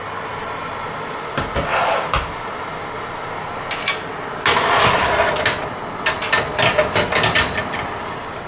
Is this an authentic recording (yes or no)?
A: yes